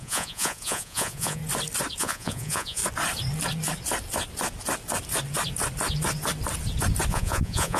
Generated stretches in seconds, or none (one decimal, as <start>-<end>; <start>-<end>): 0.0-1.4; 2.0-2.8; 7.1-7.8